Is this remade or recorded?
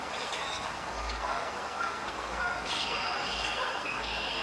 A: remade